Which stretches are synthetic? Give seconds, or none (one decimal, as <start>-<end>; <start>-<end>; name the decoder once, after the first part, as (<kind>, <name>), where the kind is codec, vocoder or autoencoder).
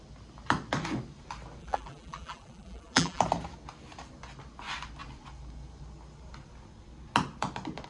1.6-3.2 (vocoder, BigVGAN v2)